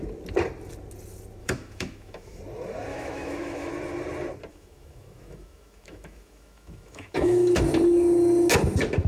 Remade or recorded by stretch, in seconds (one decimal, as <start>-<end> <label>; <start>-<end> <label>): 0.0-1.4 recorded; 1.4-2.4 remade; 2.4-2.9 recorded; 2.9-3.7 remade; 3.7-4.5 recorded; 4.5-7.6 remade; 7.6-9.1 recorded